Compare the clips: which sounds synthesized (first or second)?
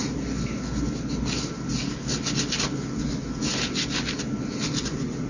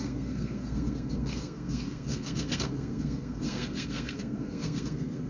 second